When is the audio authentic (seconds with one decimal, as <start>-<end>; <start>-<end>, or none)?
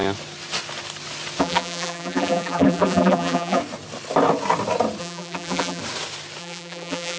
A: 0.0-1.4; 3.6-5.0; 5.8-6.4